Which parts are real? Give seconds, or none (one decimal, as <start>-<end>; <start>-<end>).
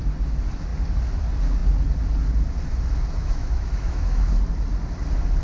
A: 0.0-3.2; 4.3-5.4